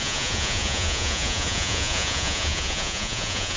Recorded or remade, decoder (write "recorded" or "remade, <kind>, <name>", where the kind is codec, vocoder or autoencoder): remade, vocoder, Vocos